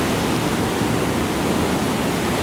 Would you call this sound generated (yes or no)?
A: no